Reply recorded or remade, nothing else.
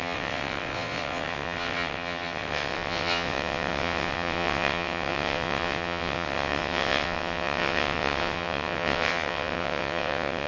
remade